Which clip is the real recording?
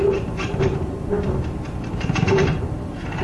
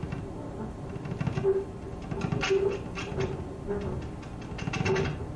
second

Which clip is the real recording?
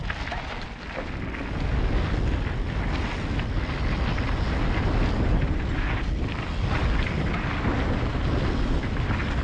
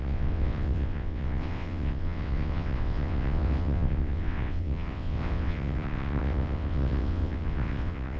first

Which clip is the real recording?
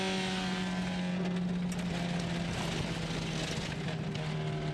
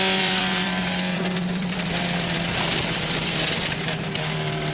first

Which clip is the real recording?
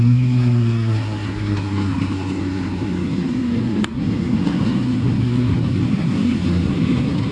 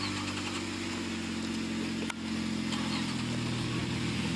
second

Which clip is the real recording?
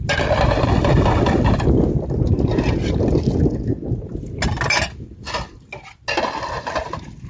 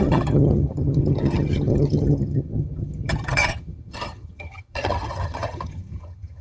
first